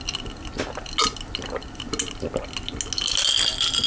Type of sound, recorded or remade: recorded